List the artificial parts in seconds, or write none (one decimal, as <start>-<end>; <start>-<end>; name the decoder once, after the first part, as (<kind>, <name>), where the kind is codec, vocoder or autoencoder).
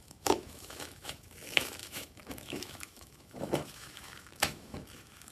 0.0-5.3 (autoencoder, DAC-VAE)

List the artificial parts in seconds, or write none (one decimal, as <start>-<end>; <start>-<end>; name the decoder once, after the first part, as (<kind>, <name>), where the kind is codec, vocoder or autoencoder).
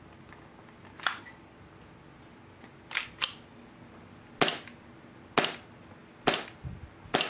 none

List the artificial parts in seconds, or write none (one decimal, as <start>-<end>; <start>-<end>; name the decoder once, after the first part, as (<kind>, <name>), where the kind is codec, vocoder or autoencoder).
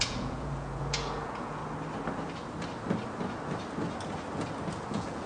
0.0-1.6 (vocoder, Vocos); 4.8-5.3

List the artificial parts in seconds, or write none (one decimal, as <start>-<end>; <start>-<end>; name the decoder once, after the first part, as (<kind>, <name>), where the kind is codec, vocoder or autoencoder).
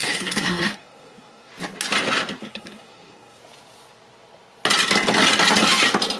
0.0-1.5 (codec, SNAC); 2.4-3.4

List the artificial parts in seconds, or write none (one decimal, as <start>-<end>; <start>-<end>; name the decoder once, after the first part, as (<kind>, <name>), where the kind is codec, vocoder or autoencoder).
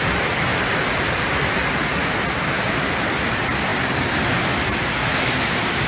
none